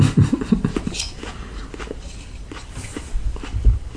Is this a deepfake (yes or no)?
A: no